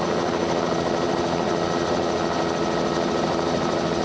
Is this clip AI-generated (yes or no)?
no